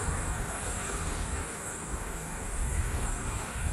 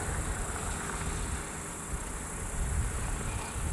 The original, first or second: second